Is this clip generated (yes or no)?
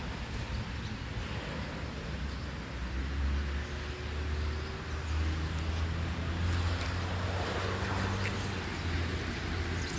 no